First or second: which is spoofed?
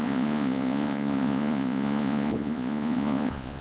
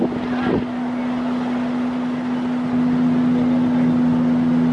first